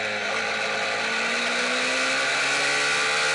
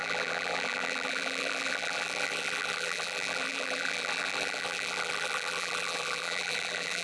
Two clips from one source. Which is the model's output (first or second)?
second